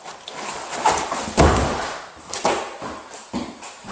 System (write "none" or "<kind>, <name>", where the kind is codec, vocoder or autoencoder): none